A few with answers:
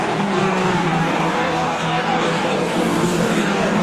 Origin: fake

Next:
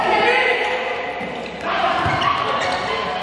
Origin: real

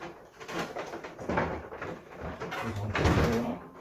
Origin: real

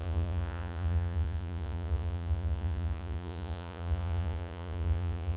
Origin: fake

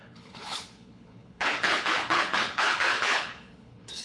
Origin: fake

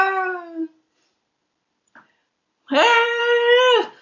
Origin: real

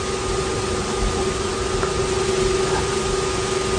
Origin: real